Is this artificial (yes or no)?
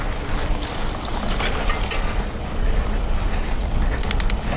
no